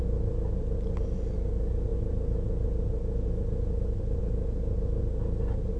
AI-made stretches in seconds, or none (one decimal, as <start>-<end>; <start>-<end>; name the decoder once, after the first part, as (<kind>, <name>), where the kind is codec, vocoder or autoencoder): none